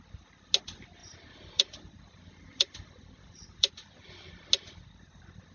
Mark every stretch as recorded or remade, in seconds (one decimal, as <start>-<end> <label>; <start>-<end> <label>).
0.0-1.0 recorded; 1.0-4.3 remade; 4.3-5.5 recorded